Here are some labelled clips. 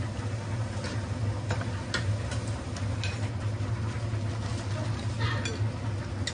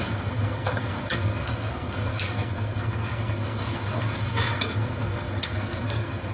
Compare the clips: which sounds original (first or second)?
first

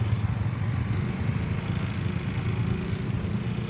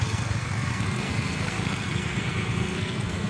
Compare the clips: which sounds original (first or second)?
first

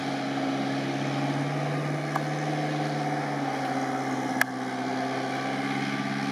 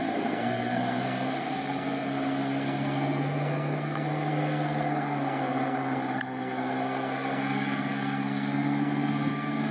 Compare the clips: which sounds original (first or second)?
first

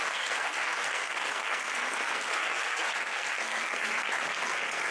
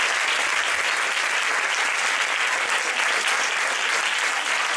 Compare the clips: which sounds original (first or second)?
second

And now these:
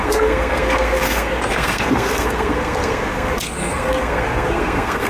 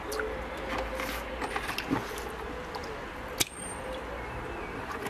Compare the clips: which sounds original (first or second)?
second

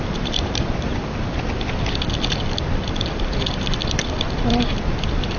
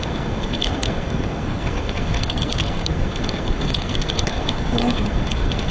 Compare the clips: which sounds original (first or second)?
first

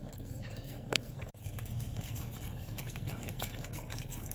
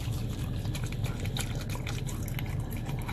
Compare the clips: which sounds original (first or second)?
second